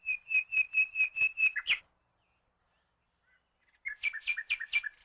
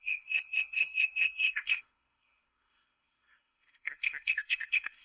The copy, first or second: second